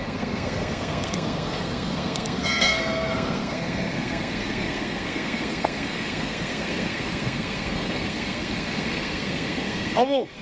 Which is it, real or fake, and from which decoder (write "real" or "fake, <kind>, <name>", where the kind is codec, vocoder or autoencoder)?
fake, codec, SNAC